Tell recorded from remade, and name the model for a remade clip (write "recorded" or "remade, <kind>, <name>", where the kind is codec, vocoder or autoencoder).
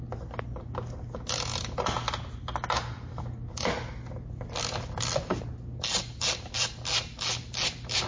recorded